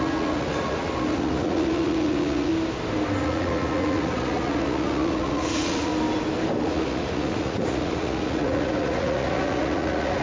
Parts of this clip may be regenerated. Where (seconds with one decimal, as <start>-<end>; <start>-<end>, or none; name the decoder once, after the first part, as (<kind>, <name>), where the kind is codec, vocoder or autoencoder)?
0.0-2.5 (vocoder, Vocos); 3.2-5.9; 6.6-10.2